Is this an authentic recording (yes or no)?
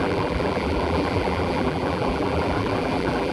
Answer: no